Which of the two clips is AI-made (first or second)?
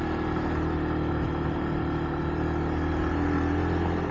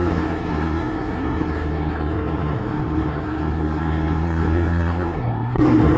second